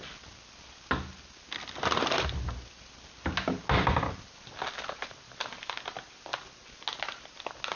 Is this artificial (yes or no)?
no